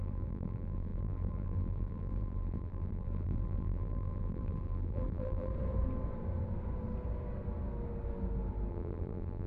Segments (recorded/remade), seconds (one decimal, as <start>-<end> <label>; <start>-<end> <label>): 0.0-5.5 remade; 5.5-8.7 recorded; 8.7-9.5 remade